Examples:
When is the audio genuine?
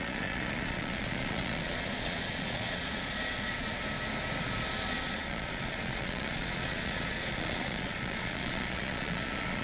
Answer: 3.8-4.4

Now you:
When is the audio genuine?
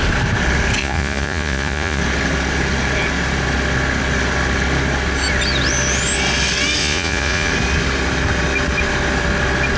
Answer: 0.0-0.8; 2.0-6.8; 7.5-9.8